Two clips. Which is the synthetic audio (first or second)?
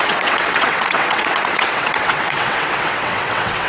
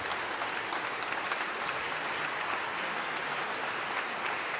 first